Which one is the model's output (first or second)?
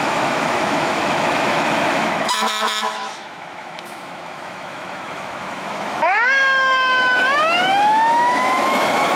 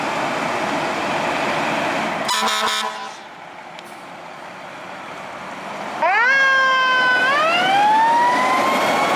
first